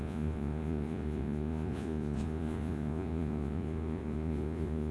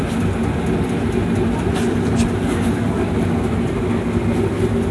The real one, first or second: second